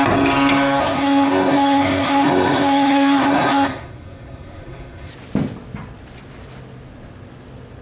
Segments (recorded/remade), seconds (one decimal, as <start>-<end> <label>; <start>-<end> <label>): 0.0-0.8 recorded; 0.8-5.1 remade; 5.1-7.8 recorded